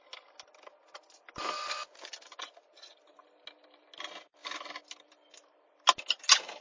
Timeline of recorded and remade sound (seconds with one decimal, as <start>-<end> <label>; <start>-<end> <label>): 0.0-6.6 recorded